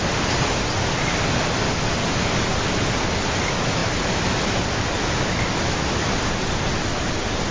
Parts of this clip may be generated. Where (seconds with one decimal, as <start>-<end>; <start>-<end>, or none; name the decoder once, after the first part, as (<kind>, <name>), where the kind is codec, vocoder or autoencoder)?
none